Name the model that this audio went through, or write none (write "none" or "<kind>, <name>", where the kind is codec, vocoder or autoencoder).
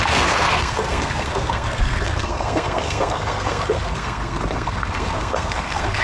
codec, SNAC